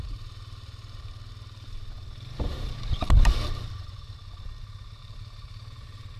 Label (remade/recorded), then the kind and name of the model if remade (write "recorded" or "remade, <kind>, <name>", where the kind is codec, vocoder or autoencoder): remade, vocoder, BigVGAN v2